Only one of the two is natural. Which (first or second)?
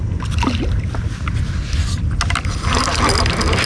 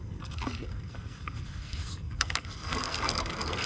first